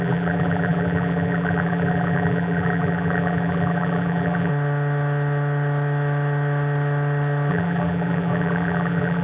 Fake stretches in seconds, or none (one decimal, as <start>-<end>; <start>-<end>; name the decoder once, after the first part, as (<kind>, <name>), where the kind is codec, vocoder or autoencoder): 0.0-4.5 (vocoder, BigVGAN v2); 7.5-9.2

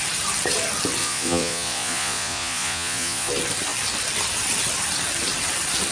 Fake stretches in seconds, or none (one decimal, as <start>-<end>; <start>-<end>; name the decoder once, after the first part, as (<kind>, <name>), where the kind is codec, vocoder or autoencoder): 1.0-3.3 (vocoder, Vocos)

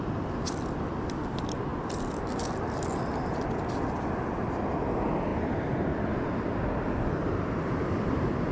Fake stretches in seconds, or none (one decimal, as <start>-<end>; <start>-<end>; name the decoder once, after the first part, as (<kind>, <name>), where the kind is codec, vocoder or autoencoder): none

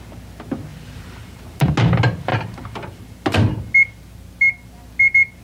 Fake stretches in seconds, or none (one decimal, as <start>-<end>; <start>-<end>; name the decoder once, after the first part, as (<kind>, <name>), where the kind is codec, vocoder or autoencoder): 0.7-1.7 (vocoder, BigVGAN v2); 2.3-3.0